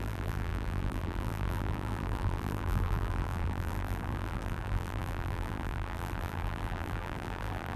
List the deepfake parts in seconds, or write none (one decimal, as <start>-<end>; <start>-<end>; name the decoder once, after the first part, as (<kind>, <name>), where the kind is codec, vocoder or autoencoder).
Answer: 0.0-7.8 (vocoder, BigVGAN v2)